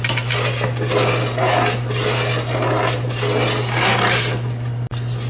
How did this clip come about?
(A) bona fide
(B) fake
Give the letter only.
A